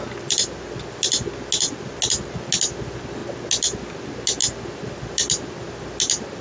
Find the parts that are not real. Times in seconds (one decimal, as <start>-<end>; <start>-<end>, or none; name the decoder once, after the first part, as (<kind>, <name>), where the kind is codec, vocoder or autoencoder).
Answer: none